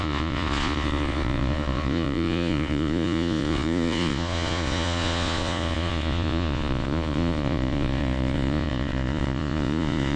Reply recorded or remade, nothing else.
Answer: remade